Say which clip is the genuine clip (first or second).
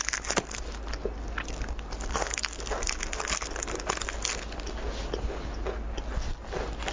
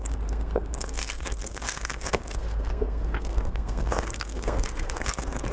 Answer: first